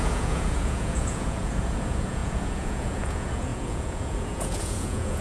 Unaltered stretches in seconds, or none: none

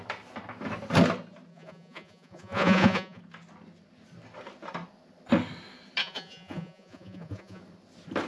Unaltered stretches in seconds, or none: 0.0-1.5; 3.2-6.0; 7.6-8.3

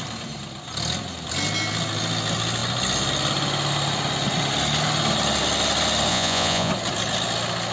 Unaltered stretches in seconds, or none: 0.0-6.1; 6.7-7.7

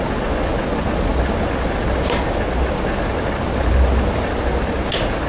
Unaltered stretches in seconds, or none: 0.0-5.3

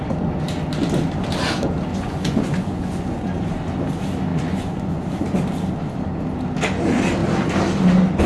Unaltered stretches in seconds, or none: 0.0-1.9; 3.5-4.3; 5.0-8.3

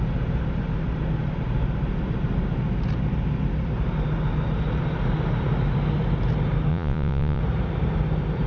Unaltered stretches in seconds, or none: 0.0-6.7; 7.4-8.5

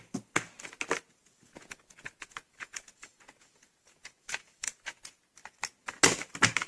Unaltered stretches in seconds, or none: 0.0-1.2; 5.2-6.7